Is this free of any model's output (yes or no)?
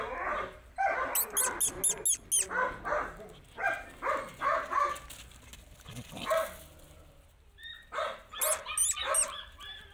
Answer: yes